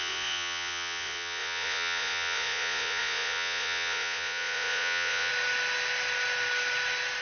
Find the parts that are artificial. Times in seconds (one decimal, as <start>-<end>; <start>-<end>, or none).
0.0-5.3